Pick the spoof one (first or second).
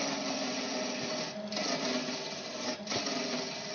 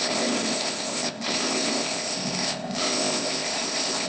second